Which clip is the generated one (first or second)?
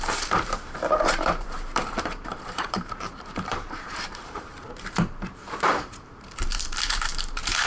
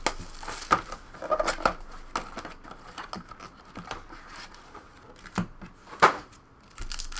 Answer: first